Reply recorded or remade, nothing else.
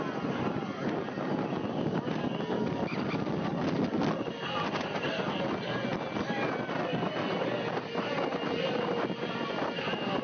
recorded